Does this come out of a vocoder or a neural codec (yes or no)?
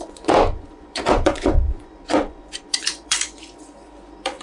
yes